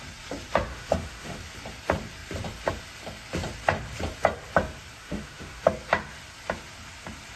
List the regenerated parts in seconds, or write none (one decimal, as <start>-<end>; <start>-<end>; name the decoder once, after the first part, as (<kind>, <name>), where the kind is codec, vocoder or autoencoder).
0.7-1.4 (autoencoder, DAC-VAE); 5.0-5.6